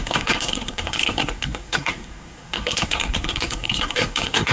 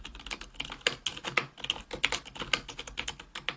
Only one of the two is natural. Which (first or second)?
second